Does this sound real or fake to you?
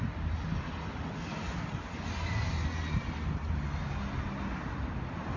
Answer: real